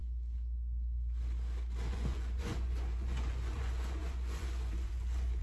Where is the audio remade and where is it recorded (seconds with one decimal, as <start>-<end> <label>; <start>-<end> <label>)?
0.0-1.9 recorded; 1.9-5.4 remade